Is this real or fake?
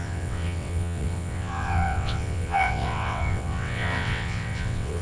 fake